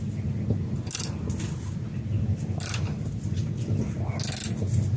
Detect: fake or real real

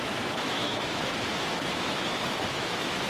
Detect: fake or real fake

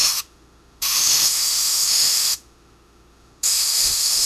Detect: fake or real fake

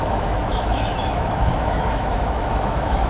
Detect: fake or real fake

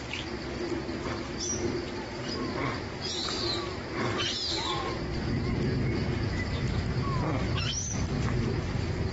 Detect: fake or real real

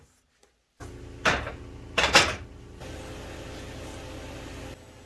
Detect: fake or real real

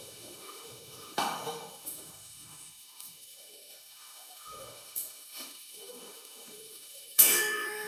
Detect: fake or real fake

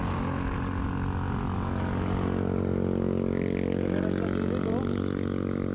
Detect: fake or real real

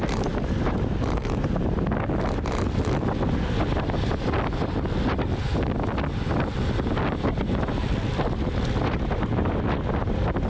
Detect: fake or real real